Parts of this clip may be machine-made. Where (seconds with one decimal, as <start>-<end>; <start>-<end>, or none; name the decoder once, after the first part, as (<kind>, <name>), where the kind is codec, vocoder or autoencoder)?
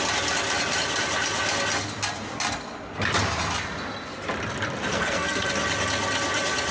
4.9-5.5 (codec, SNAC)